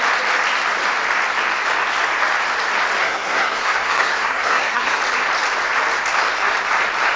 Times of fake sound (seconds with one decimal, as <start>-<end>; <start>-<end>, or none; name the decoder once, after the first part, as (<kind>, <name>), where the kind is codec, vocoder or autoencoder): 3.0-5.0 (codec, SNAC)